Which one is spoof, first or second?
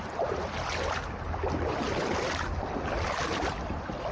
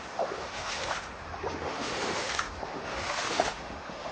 second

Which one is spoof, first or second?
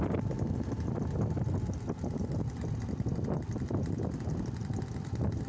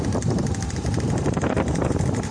second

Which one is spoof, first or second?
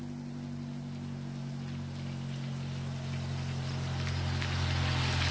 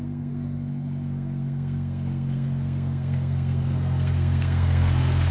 second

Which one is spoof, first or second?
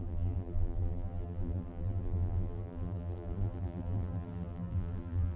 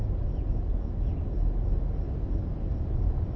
first